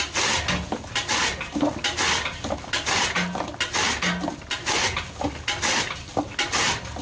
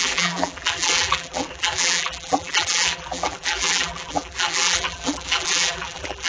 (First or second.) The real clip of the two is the first